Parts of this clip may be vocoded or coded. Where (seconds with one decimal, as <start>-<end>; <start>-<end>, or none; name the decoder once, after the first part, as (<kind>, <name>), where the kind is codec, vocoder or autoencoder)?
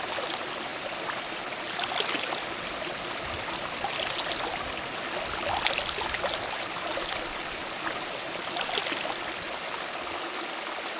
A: none